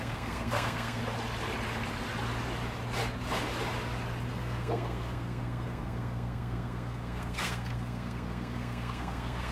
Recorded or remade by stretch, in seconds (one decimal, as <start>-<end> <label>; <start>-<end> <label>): 0.0-1.0 remade; 1.0-4.3 recorded; 4.3-9.5 remade